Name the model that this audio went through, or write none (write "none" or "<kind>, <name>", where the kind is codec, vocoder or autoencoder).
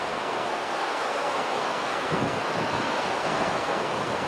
codec, SNAC